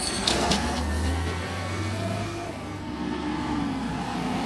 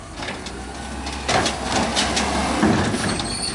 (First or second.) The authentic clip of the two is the second